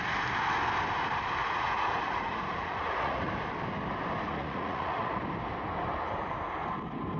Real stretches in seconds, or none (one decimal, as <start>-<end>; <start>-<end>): 0.0-1.4; 3.3-4.3; 5.2-7.2